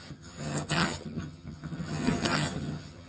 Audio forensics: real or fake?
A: fake